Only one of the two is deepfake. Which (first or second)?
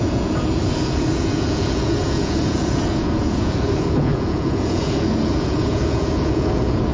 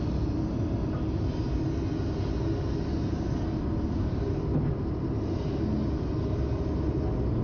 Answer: first